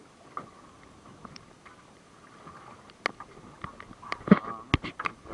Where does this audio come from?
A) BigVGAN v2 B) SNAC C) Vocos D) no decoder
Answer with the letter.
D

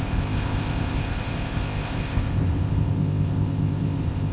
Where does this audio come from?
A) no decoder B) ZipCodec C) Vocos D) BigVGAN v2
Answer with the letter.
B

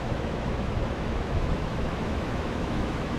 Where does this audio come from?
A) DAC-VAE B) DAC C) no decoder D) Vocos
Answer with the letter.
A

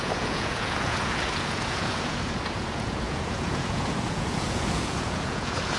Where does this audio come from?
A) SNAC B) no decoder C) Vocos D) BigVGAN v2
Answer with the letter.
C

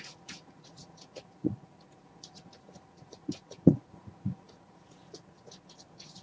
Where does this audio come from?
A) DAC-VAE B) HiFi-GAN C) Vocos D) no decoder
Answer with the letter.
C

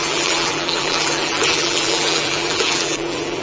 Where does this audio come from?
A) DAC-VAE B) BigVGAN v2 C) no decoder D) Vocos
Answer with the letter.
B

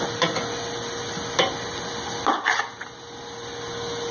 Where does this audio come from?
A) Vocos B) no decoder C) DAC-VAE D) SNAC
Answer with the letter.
B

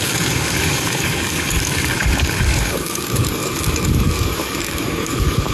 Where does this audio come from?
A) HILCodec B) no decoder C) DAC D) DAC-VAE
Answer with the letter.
C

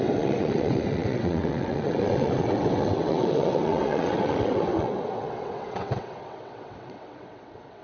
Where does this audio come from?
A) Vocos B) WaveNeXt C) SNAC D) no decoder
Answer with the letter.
B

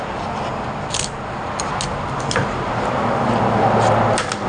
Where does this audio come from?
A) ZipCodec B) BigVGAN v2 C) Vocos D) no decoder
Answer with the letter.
D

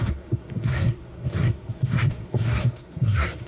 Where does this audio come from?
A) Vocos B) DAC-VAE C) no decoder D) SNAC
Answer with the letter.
D